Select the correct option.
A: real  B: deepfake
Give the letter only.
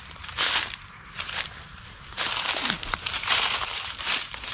B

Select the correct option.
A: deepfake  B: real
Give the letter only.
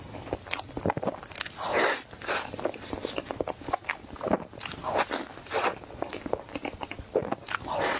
B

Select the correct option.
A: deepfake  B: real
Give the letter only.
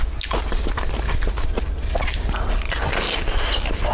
B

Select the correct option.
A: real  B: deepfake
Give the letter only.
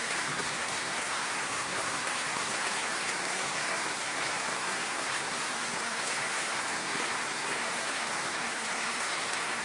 B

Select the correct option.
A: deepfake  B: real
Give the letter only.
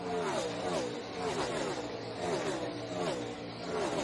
B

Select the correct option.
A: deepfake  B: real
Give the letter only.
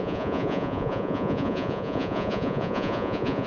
A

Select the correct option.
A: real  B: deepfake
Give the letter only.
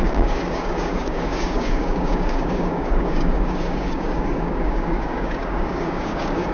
B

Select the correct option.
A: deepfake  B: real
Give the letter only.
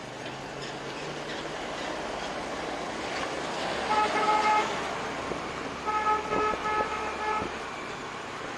B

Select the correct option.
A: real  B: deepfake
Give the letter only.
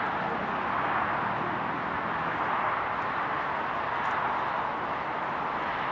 A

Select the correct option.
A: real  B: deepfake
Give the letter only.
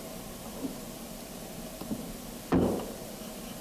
B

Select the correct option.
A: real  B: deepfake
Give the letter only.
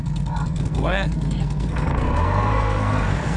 B